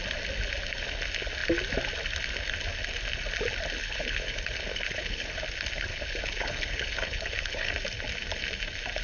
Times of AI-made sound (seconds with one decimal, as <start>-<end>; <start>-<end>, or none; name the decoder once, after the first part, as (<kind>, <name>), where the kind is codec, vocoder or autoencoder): 3.8-5.4 (codec, HILCodec); 5.9-7.7